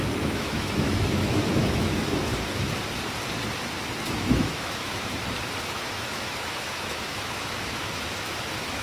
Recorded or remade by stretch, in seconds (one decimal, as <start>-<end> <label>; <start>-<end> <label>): 0.0-2.3 remade; 2.3-4.0 recorded; 4.0-5.2 remade; 5.2-5.7 recorded; 5.7-8.8 remade